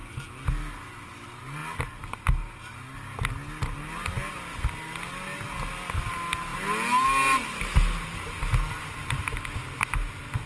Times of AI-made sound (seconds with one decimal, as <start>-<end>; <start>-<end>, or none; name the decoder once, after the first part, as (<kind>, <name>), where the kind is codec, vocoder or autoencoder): none